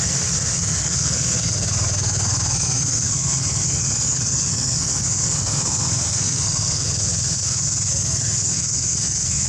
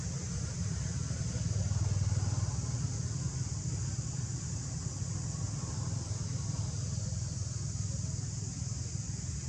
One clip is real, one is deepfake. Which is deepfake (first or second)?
first